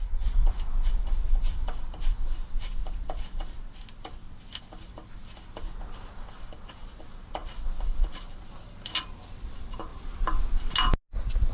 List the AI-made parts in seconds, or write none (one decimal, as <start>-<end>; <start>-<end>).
none